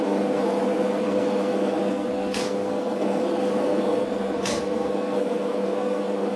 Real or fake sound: fake